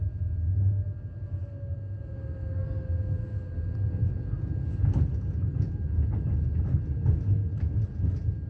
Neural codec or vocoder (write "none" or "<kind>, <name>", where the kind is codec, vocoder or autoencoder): none